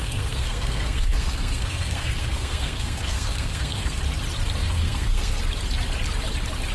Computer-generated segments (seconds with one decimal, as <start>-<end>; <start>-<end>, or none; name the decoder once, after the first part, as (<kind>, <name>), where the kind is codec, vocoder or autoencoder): 0.0-4.0 (codec, SNAC); 4.6-5.4